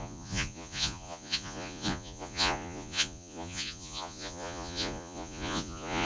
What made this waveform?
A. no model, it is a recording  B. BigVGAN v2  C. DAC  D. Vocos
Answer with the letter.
D